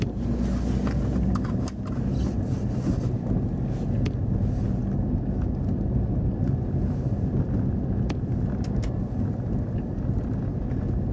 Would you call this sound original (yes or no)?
yes